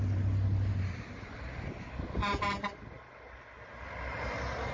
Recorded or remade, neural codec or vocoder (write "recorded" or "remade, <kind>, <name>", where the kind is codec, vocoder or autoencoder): recorded